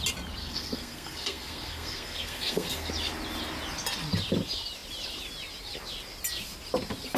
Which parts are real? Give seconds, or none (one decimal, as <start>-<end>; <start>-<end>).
0.0-0.4; 2.9-7.2

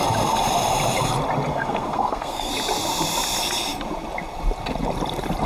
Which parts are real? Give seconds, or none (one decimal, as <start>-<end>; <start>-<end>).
0.0-1.5; 2.5-5.5

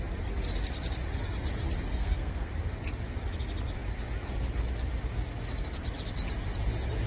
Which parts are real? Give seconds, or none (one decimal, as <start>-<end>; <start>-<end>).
0.0-1.9; 2.5-7.1